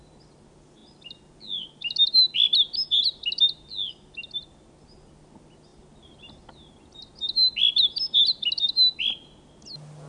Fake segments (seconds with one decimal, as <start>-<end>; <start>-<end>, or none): none